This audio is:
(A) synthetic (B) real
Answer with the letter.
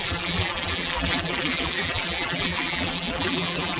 A